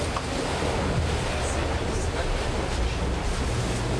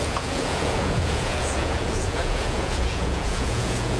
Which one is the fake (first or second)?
second